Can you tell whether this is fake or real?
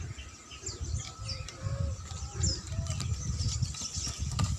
real